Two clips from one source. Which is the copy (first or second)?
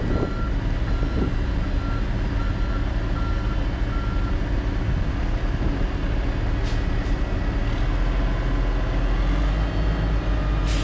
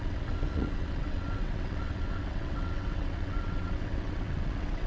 second